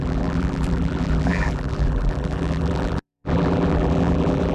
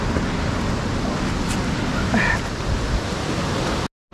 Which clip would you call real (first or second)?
second